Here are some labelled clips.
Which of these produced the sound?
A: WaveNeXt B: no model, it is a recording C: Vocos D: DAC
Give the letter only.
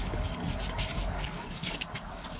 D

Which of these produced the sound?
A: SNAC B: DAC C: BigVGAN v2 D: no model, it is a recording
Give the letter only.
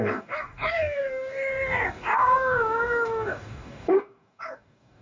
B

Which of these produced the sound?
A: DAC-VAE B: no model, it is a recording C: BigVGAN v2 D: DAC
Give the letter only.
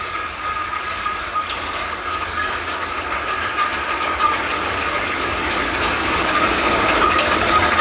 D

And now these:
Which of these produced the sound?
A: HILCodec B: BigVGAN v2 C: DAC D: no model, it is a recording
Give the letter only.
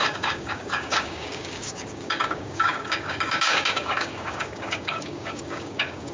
C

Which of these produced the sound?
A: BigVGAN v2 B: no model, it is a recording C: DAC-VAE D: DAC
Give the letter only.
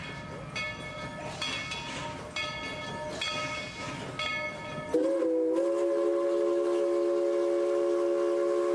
B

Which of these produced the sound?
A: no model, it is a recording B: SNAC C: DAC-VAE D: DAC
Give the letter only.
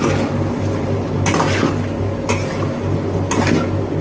A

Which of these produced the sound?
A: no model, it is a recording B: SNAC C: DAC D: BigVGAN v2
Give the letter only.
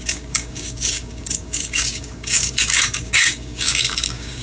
C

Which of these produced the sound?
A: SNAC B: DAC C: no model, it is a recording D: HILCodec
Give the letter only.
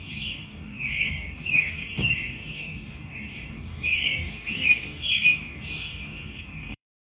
B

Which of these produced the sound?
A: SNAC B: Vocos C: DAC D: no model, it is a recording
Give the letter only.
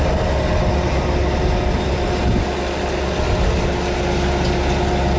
D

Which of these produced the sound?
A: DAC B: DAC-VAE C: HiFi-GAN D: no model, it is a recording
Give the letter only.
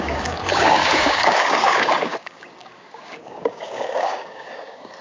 A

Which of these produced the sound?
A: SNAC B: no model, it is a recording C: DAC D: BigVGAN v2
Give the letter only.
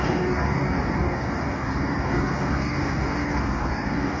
C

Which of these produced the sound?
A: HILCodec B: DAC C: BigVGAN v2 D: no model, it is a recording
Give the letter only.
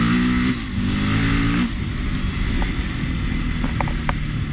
D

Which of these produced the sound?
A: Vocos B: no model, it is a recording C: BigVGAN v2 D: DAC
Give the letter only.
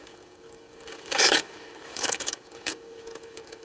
D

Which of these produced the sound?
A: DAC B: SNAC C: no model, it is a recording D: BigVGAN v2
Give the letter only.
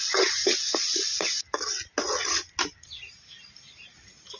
C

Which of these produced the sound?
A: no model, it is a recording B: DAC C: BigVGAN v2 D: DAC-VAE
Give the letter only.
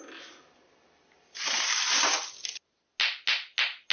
A